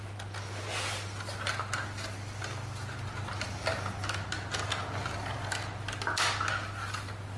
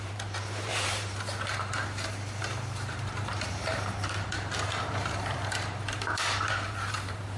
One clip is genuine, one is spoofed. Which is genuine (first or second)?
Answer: first